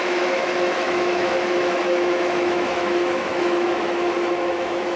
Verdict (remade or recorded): remade